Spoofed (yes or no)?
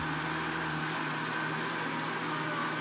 no